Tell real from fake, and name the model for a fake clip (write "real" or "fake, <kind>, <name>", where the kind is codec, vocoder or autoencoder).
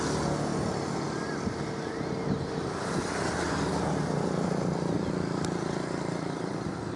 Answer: real